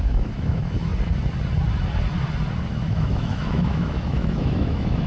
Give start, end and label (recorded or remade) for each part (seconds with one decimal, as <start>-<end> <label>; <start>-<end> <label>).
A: 0.0-0.9 remade; 0.9-2.7 recorded; 2.7-5.1 remade